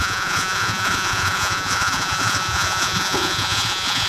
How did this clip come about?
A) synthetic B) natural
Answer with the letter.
A